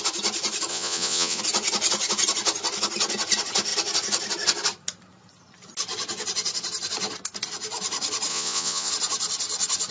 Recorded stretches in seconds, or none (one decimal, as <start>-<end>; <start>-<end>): 0.0-0.7; 1.4-8.3; 8.9-9.9